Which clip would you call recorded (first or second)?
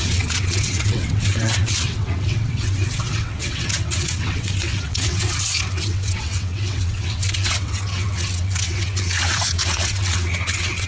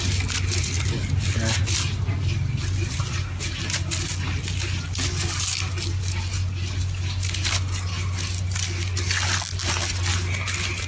second